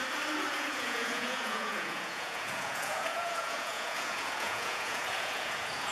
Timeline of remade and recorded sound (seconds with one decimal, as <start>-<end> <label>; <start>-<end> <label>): 0.0-0.5 recorded; 0.5-5.9 remade